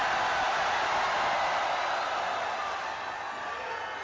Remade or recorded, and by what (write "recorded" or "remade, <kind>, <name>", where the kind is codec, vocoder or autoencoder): recorded